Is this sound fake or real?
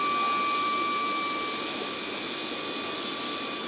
real